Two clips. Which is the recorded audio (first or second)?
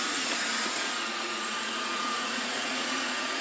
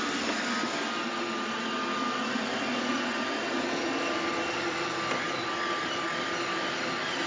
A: second